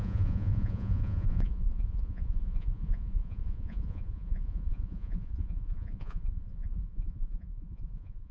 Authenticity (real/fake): fake